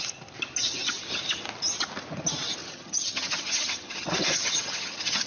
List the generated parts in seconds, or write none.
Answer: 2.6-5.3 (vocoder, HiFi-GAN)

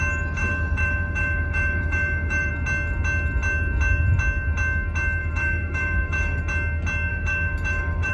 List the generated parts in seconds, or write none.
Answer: 0.4-2.5 (autoencoder, DAC-VAE); 5.2-6.4; 7.1-8.1

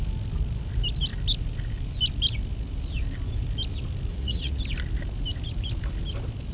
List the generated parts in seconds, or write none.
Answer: 4.1-4.6 (vocoder, Vocos)

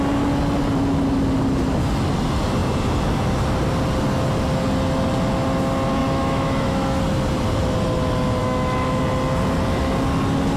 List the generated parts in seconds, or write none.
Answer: 6.0-7.0 (autoencoder, DAC-VAE); 8.4-9.0